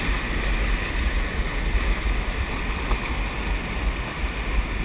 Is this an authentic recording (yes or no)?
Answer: yes